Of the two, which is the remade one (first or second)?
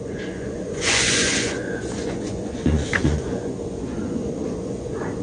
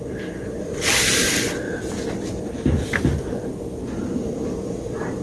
first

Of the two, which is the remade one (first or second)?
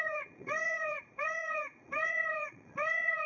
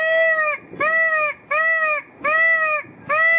first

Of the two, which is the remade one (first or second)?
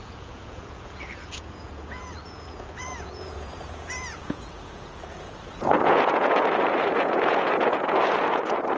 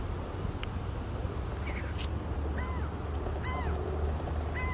first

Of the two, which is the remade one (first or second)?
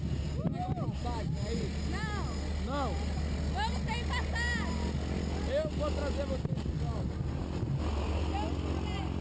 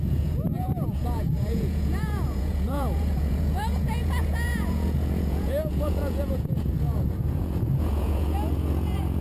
second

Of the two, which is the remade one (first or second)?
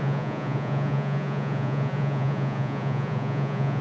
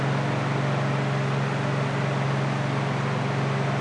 first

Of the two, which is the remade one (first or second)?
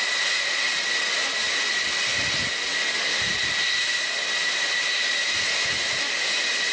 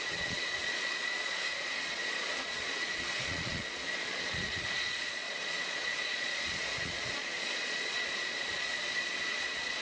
second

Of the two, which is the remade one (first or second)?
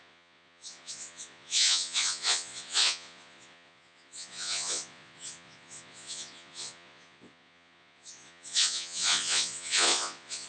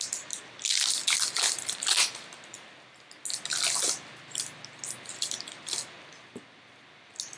first